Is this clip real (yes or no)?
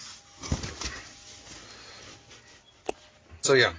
yes